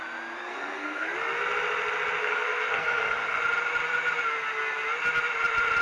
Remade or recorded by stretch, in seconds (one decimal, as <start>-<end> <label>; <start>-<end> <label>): 0.0-0.4 recorded; 0.4-1.1 remade; 1.1-2.2 recorded; 2.2-3.4 remade; 3.4-5.8 recorded